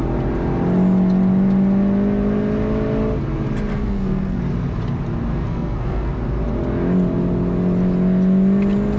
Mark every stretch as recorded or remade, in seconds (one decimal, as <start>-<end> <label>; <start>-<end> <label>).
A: 0.0-3.7 recorded; 3.7-4.4 remade; 4.4-5.3 recorded; 5.3-6.1 remade; 6.1-9.0 recorded